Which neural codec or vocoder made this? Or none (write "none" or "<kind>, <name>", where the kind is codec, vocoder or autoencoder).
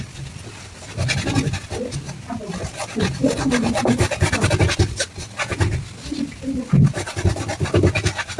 none